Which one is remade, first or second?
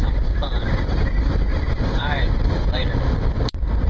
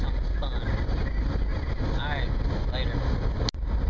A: first